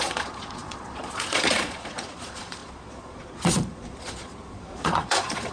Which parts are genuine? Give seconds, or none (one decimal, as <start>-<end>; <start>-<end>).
none